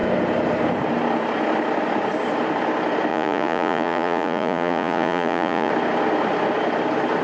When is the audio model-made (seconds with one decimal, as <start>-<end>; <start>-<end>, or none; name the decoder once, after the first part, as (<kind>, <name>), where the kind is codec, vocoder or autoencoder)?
3.1-5.7 (vocoder, Vocos)